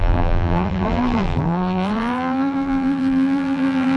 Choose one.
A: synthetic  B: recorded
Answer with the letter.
A